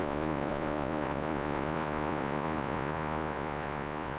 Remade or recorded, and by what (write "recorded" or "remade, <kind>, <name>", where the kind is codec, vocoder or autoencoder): remade, vocoder, Vocos